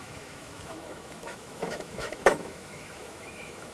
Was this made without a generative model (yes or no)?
no